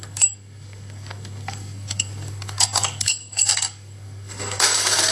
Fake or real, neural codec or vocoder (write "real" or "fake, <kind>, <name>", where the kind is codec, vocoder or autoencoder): fake, codec, SNAC